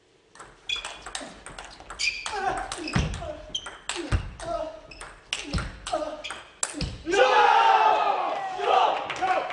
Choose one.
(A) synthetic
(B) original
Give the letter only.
B